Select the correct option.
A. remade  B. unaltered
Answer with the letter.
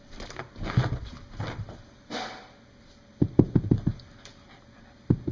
B